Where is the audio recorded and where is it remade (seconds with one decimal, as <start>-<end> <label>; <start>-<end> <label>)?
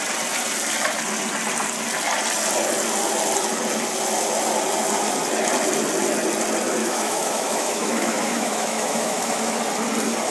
0.0-6.8 recorded; 6.8-9.6 remade; 9.6-10.3 recorded